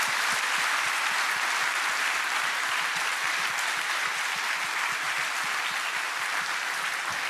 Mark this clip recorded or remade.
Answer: recorded